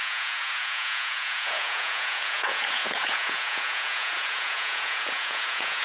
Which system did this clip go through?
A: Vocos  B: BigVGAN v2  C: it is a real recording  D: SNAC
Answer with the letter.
A